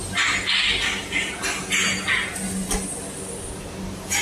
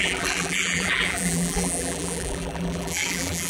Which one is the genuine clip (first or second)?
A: first